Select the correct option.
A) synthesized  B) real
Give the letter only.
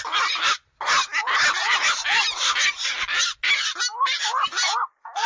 B